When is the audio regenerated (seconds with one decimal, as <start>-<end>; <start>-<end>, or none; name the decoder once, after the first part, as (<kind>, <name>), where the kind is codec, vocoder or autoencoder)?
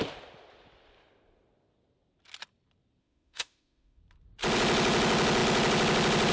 3.0-4.0 (autoencoder, DAC-VAE)